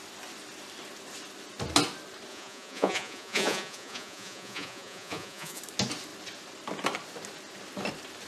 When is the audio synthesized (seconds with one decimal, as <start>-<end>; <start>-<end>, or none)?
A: 2.3-5.6